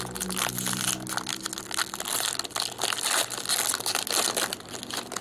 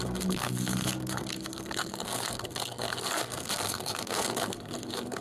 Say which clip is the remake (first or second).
second